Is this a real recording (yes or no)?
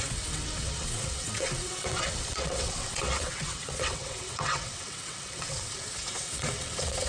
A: no